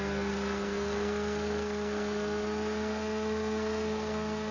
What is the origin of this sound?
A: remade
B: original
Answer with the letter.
A